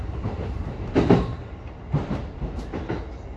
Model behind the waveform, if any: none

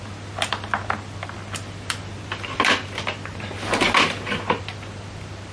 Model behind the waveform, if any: vocoder, BigVGAN v2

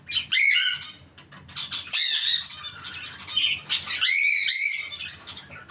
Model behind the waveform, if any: none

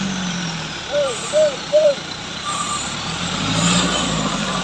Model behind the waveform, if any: vocoder, BigVGAN v2